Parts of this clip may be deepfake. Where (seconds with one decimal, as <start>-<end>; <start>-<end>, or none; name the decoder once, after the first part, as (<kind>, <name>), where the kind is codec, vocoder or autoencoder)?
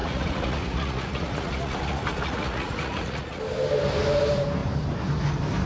0.0-3.4 (vocoder, Vocos)